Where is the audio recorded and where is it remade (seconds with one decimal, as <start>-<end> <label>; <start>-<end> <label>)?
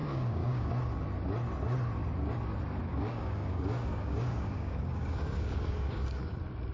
0.0-0.7 remade; 0.7-2.9 recorded; 2.9-6.3 remade; 6.3-6.7 recorded